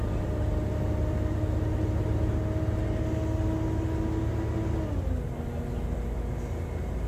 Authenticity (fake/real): real